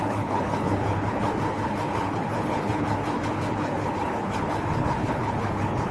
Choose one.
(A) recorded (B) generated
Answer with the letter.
B